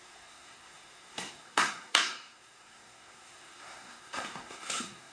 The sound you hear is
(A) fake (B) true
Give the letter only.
A